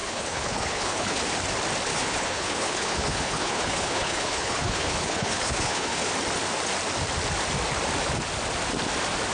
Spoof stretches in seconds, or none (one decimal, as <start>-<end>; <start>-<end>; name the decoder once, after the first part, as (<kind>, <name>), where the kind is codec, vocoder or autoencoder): 0.0-1.2 (codec, HILCodec); 1.9-6.1